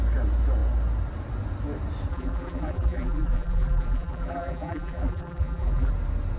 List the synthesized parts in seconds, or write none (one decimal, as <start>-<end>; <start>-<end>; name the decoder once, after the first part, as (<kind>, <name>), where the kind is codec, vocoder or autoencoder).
2.1-5.9 (vocoder, BigVGAN v2)